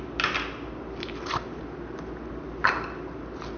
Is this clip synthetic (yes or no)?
no